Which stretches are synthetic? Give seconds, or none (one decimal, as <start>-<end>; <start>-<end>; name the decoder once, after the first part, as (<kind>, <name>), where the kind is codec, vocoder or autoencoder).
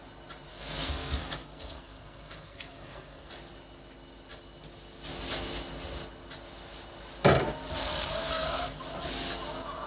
0.5-3.3 (codec, SNAC); 7.8-8.8